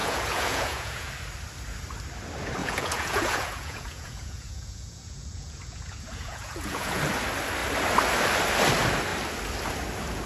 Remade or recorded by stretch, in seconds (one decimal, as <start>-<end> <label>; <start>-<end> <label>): 0.0-1.1 remade; 1.1-2.6 recorded; 2.6-7.0 remade; 7.0-10.3 recorded